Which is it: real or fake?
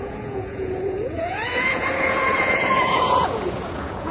fake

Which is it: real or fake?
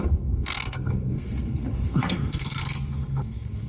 fake